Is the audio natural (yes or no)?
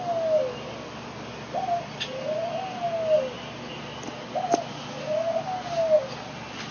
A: yes